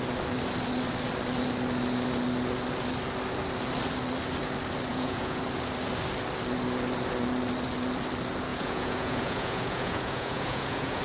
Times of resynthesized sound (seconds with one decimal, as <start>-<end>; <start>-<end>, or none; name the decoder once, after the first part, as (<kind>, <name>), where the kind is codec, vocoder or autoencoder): 4.9-5.4 (vocoder, Vocos); 8.5-11.0

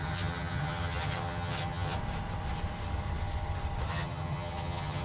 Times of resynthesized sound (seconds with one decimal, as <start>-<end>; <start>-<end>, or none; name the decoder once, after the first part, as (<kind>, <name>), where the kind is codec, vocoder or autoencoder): 0.0-2.0 (vocoder, HiFi-GAN); 3.9-5.0

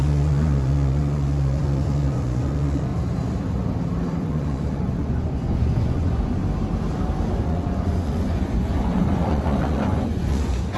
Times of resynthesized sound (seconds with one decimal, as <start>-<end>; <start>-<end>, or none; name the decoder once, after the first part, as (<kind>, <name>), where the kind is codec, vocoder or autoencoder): 0.0-2.9 (vocoder, Vocos); 4.3-6.4; 7.4-10.8